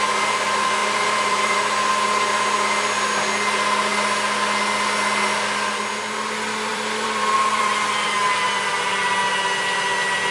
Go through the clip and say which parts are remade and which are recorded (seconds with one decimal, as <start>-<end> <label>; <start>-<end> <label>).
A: 0.0-0.8 recorded; 0.8-1.6 remade; 1.6-6.7 recorded; 6.7-7.7 remade; 7.7-10.3 recorded